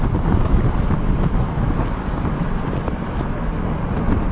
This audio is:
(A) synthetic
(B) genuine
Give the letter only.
B